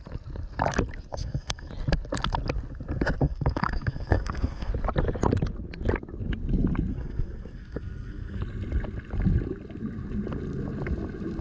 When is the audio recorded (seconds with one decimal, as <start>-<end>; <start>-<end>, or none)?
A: 0.0-1.1; 1.7-3.2; 4.7-6.9; 8.4-11.4